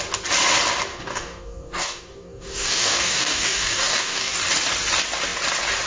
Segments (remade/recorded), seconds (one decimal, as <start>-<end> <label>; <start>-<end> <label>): 0.0-0.9 recorded; 0.9-4.4 remade; 4.4-5.9 recorded